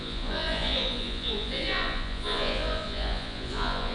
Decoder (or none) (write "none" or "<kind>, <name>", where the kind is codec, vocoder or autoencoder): vocoder, Vocos